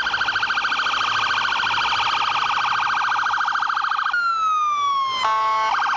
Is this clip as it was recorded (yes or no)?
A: yes